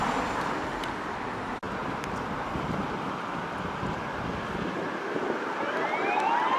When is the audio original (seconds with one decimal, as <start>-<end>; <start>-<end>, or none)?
0.0-6.6